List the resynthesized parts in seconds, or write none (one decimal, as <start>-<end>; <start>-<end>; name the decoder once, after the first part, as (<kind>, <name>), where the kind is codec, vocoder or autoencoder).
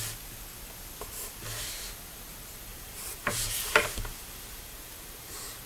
2.7-5.7 (vocoder, BigVGAN v2)